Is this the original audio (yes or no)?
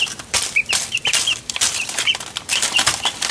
no